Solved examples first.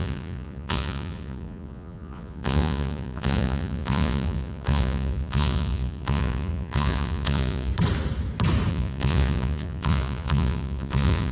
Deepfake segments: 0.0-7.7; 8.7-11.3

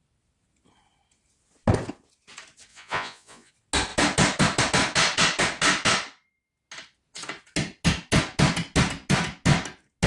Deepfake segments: 2.7-3.5

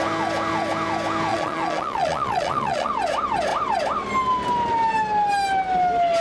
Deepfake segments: 1.3-2.9

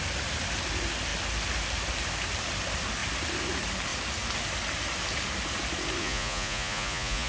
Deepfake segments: 6.0-7.3

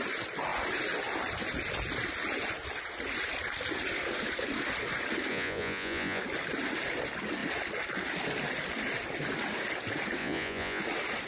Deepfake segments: 5.3-6.2; 10.2-10.8

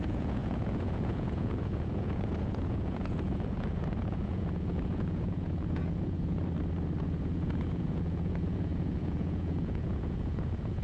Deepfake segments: 0.0-6.4; 7.0-10.8

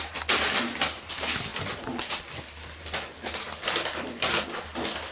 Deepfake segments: none

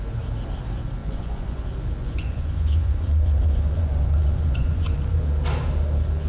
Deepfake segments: 1.0-1.6; 2.0-5.2